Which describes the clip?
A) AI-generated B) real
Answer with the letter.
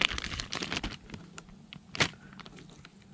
B